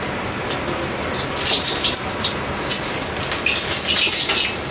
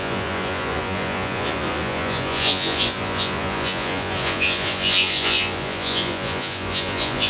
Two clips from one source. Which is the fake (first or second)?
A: second